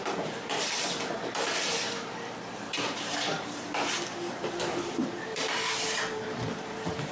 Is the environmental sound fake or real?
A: fake